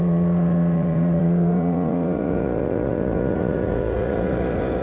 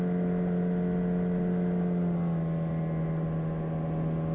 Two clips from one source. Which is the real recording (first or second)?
second